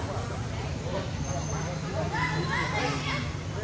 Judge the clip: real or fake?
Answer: real